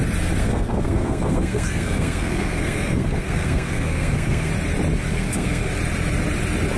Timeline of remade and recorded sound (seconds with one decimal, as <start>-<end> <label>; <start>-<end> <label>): 0.0-0.4 recorded; 0.4-4.5 remade; 4.5-5.1 recorded; 5.1-5.7 remade; 5.7-6.8 recorded